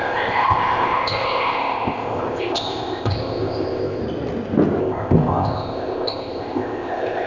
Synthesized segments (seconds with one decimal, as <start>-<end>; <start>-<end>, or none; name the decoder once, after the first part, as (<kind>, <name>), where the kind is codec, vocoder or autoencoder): 0.0-4.0 (codec, ZipCodec); 4.8-7.3